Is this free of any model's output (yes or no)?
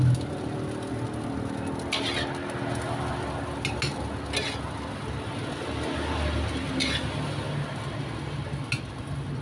yes